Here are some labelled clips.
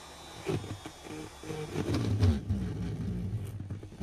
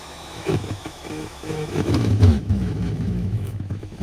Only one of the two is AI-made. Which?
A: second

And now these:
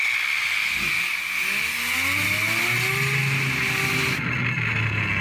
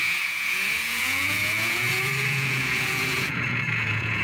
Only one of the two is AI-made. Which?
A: second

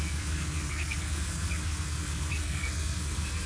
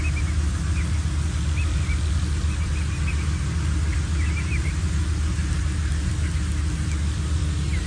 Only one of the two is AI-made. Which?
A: first